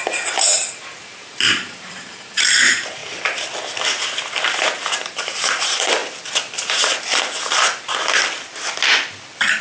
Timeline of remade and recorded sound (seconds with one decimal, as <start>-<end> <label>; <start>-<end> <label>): 0.0-3.0 remade; 3.0-4.1 recorded; 4.1-6.0 remade; 6.0-9.6 recorded